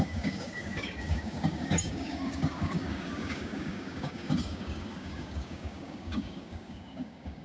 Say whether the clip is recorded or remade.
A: remade